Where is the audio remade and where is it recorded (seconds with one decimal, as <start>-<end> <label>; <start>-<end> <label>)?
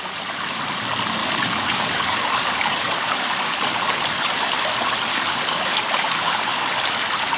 0.0-1.2 recorded; 1.2-4.6 remade; 4.6-5.1 recorded; 5.1-6.7 remade; 6.7-7.4 recorded